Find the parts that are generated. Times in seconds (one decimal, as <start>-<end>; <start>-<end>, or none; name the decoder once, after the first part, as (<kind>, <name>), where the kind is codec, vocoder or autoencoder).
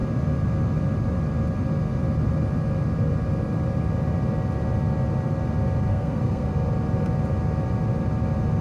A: 5.9-6.5 (codec, SNAC)